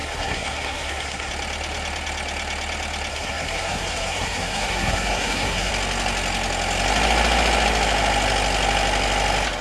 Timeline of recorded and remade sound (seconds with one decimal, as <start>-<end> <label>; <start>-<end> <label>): 0.0-1.3 remade; 1.3-3.1 recorded; 3.1-5.7 remade; 5.7-9.6 recorded